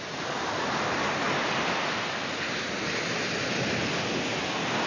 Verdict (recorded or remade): recorded